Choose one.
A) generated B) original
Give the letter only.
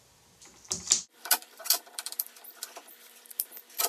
A